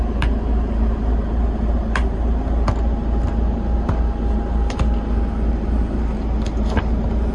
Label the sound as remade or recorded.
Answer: remade